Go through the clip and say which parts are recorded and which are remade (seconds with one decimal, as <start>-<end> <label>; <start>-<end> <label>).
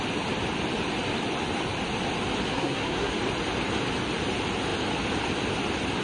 0.0-2.5 recorded; 2.5-3.1 remade; 3.1-6.0 recorded